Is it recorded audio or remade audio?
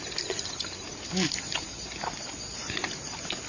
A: recorded